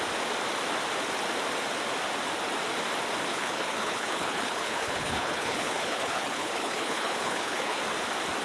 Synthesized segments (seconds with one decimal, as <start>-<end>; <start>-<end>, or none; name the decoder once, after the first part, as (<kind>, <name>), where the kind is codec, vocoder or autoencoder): 3.3-7.8 (codec, HILCodec)

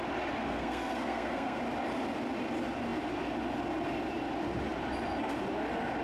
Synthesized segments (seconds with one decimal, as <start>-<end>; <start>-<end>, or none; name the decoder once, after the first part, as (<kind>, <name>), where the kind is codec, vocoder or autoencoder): 0.4-1.6 (codec, SNAC)

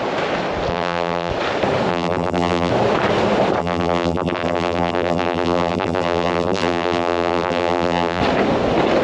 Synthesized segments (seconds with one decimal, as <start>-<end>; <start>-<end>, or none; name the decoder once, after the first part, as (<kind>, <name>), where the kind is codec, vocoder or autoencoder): 0.7-1.3 (vocoder, BigVGAN v2); 1.9-2.7; 3.6-8.2

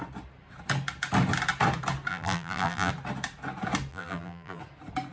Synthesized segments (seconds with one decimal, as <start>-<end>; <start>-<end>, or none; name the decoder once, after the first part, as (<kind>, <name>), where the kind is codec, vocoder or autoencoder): 2.1-2.9 (vocoder, BigVGAN v2); 3.9-4.6

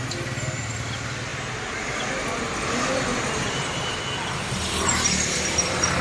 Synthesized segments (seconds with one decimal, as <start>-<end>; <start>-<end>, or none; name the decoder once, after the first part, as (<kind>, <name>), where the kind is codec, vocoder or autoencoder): none